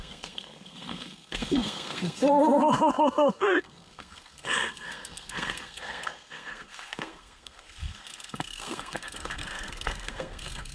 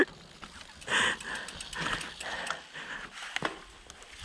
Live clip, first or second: second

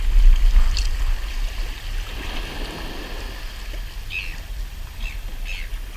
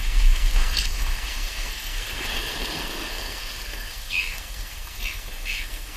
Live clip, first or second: first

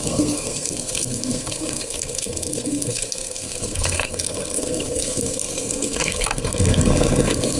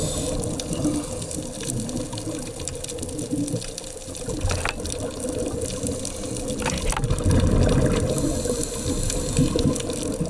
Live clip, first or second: second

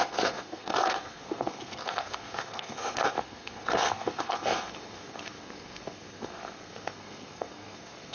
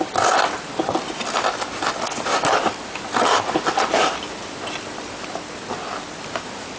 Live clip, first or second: second